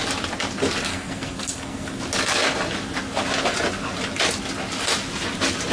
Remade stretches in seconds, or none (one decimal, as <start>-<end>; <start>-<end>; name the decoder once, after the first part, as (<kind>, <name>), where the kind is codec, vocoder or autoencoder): 0.9-2.0 (codec, SNAC)